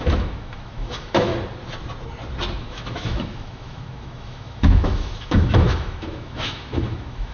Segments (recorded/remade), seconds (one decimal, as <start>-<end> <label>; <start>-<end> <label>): 0.0-1.3 remade; 1.3-2.6 recorded; 2.6-7.3 remade